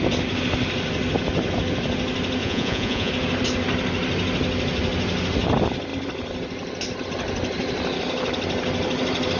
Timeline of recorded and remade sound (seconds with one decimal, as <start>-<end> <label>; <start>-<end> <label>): 0.0-2.4 recorded; 2.4-3.1 remade; 3.1-9.4 recorded